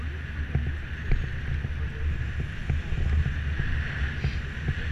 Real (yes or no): yes